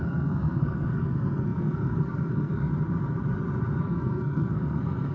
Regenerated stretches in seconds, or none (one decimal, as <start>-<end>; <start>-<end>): 0.0-2.7; 3.8-5.1